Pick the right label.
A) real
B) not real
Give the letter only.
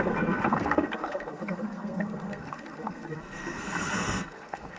B